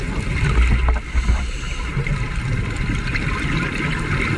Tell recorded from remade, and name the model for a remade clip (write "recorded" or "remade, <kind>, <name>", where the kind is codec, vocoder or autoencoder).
recorded